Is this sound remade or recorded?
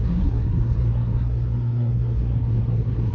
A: remade